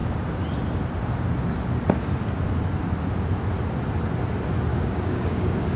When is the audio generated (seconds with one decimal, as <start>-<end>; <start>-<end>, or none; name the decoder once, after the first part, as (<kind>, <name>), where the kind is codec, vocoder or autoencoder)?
4.7-5.8 (codec, DAC)